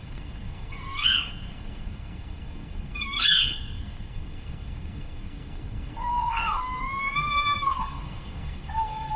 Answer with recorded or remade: remade